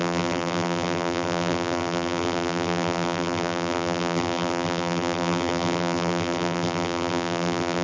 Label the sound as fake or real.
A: fake